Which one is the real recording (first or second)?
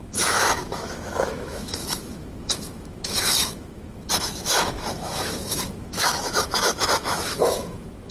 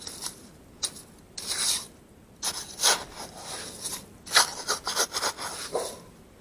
second